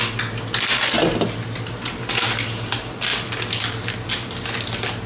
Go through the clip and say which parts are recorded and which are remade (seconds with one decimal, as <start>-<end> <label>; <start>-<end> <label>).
0.0-5.1 recorded